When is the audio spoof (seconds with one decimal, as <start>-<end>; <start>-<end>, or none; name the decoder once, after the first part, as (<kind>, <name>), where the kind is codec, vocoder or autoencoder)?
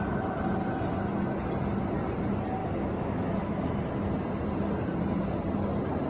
2.6-3.8 (autoencoder, DAC-VAE)